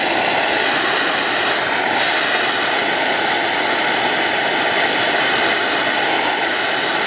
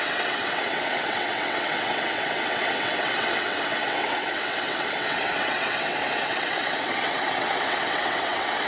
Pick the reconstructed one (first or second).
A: second